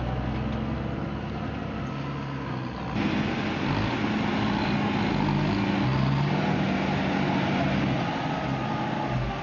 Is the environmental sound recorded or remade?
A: recorded